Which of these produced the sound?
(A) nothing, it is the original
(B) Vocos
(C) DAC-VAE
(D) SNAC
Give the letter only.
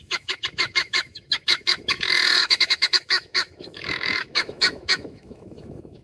C